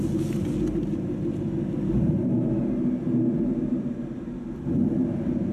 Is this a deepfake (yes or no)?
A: no